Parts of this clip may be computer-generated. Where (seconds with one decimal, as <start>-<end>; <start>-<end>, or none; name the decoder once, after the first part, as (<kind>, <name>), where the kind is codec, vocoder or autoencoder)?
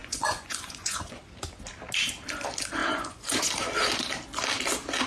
0.0-1.2 (vocoder, Vocos); 2.8-3.4